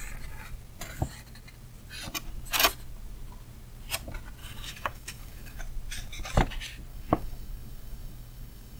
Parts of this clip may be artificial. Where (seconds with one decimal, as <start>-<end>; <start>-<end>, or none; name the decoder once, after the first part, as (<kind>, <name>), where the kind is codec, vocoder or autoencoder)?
4.4-5.6 (codec, DAC); 6.9-8.8